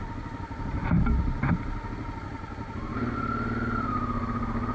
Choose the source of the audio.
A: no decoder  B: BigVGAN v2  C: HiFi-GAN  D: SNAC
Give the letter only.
A